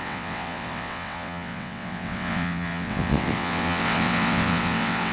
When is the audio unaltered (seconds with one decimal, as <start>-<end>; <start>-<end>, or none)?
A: none